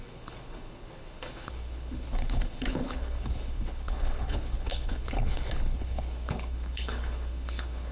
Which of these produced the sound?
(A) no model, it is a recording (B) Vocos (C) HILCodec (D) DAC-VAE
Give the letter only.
C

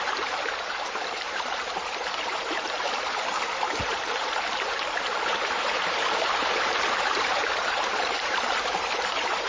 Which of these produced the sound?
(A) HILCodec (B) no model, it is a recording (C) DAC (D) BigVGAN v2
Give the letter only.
D